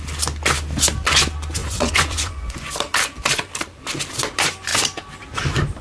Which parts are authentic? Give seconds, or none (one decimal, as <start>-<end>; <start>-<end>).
0.0-1.6; 2.7-5.8